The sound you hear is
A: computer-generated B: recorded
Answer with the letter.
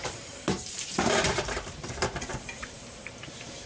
A